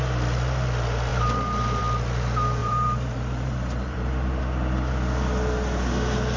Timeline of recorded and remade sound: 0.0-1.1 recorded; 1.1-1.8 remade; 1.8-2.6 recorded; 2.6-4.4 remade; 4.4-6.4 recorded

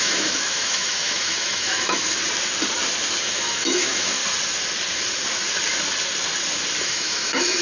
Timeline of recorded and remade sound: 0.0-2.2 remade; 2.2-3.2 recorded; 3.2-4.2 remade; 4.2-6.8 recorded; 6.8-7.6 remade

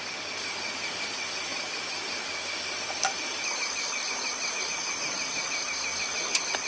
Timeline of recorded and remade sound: 0.0-6.7 recorded

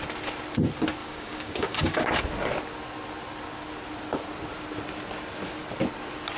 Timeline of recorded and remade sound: 0.0-1.0 recorded; 1.0-2.2 remade; 2.2-6.4 recorded

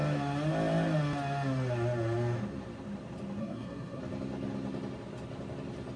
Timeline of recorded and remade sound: 0.0-3.4 recorded; 3.4-4.0 remade; 4.0-6.0 recorded

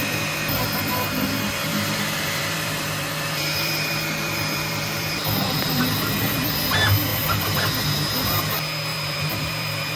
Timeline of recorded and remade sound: 0.0-1.7 recorded; 1.7-6.5 remade; 6.5-7.1 recorded; 7.1-7.7 remade; 7.7-8.9 recorded; 8.9-10.0 remade

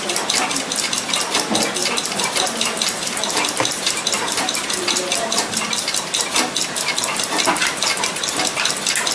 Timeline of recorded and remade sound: 0.0-1.8 recorded; 1.8-5.7 remade; 5.7-7.6 recorded; 7.6-8.2 remade; 8.2-9.1 recorded